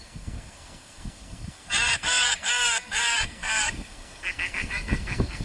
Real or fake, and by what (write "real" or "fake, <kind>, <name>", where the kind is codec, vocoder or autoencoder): fake, codec, SNAC